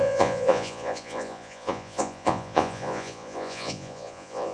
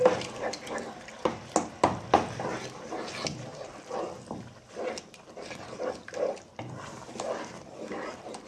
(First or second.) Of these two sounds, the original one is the second